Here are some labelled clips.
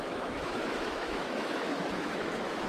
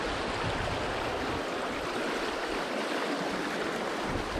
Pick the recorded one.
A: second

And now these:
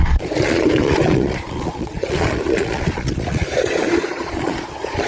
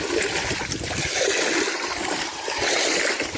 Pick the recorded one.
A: second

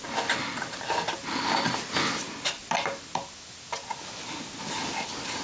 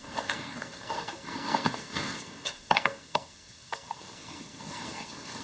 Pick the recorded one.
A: first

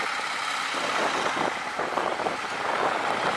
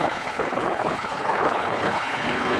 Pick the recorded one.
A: first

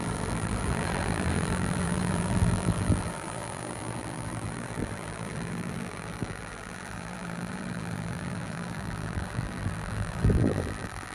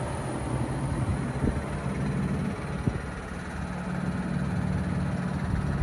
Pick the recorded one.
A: second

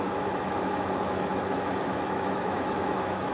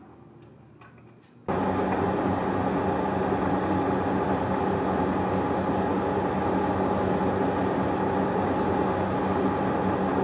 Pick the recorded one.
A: second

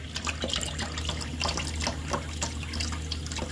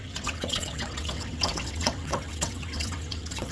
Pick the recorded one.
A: first